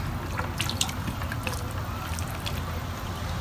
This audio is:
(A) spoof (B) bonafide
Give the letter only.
B